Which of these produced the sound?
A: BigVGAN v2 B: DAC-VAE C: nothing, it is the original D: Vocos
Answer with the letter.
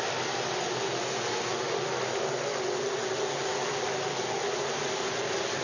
C